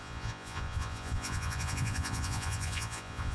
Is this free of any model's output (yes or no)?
no